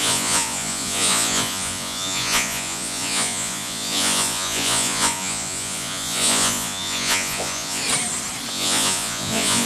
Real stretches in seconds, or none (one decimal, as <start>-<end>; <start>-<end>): 7.8-8.5